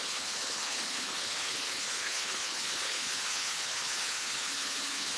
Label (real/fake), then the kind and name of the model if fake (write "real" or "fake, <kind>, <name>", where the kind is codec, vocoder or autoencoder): fake, codec, HILCodec